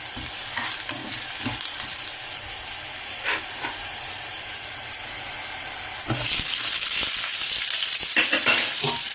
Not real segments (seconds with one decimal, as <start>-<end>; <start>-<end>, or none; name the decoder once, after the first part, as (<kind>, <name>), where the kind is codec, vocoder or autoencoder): none